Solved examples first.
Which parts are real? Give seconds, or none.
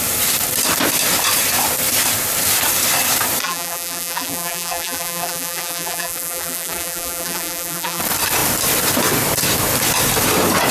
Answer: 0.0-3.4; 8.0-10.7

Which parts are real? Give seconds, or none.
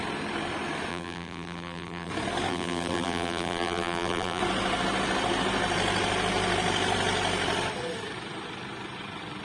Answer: 0.0-0.9; 2.1-2.5; 4.4-9.4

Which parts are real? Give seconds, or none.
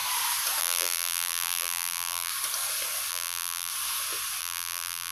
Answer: 0.0-0.6; 2.3-3.1; 3.7-4.4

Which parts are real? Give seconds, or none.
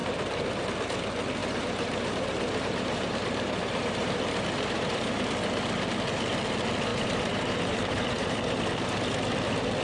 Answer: 0.0-1.4; 5.2-6.9; 8.6-9.8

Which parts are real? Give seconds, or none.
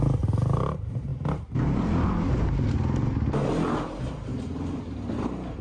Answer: 0.0-5.6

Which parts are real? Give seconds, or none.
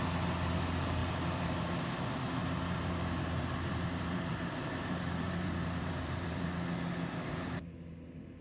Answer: 0.0-1.0; 1.8-2.4; 6.5-8.4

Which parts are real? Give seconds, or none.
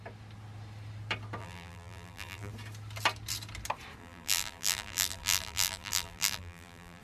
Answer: 0.0-1.4; 2.5-4.0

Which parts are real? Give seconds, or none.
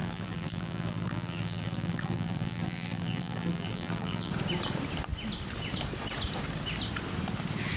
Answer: 4.3-7.8